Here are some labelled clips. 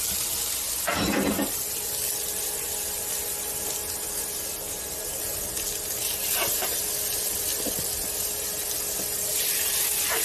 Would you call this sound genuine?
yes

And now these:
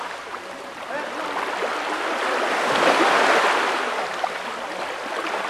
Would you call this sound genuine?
yes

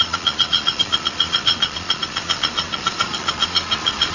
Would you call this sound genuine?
no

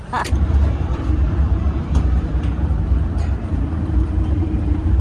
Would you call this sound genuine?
no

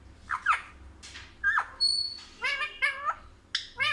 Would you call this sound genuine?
yes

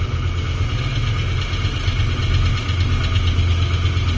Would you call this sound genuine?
yes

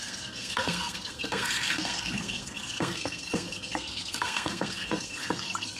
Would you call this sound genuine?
no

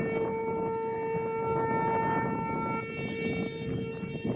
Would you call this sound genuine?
yes